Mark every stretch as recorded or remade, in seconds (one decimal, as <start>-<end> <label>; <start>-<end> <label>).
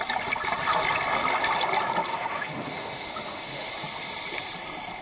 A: 0.0-2.1 recorded; 2.1-3.7 remade; 3.7-5.0 recorded